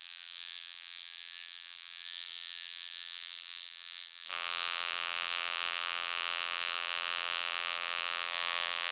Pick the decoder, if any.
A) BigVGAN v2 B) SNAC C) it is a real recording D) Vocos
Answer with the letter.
A